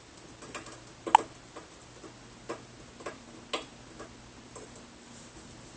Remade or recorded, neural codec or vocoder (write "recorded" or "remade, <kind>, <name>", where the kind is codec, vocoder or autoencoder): recorded